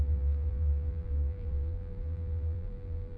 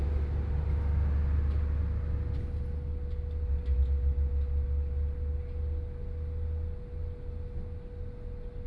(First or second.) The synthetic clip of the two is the first